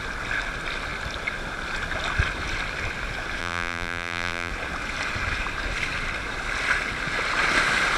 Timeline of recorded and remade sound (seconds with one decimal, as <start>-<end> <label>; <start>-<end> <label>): 0.0-3.4 recorded; 3.4-4.5 remade; 4.5-8.0 recorded